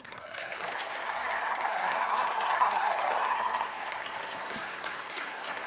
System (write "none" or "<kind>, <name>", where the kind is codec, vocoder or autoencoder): codec, SNAC